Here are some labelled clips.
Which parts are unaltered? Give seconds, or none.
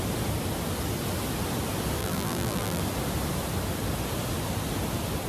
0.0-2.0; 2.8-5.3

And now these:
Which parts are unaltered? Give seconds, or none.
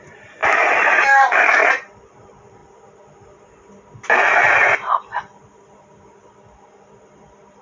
2.6-7.6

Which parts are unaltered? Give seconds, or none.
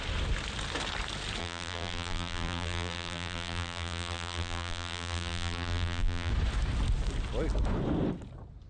0.0-1.4; 6.3-8.7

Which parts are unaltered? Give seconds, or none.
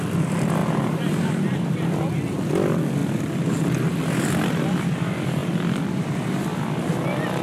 0.0-0.6; 2.0-3.0; 3.5-5.4; 6.9-7.4